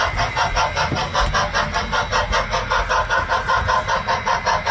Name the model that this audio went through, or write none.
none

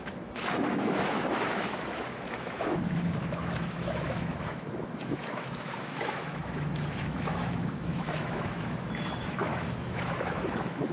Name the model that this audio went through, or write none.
autoencoder, DAC-VAE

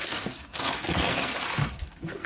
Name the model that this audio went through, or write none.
codec, SNAC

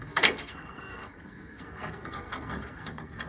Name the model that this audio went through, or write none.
codec, SNAC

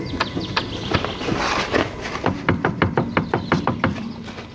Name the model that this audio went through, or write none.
none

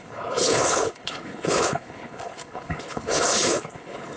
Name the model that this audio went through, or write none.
codec, HILCodec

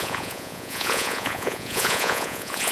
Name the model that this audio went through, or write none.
vocoder, Vocos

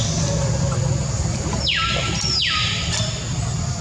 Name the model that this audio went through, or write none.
none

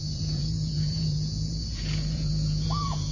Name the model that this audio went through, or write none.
vocoder, Vocos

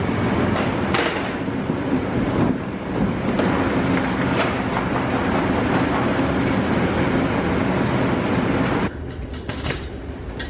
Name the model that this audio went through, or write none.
none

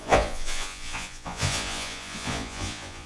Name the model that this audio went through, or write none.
vocoder, Vocos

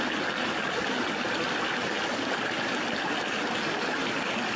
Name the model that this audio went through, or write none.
none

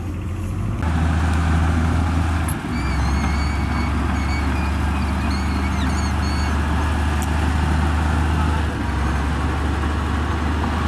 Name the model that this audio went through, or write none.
none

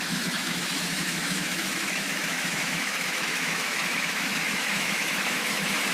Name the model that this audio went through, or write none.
autoencoder, DAC-VAE